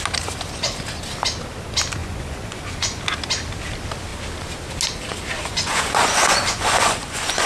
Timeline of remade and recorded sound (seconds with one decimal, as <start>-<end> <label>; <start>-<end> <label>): 0.0-2.0 recorded; 2.0-3.0 remade; 3.0-5.4 recorded; 5.4-7.5 remade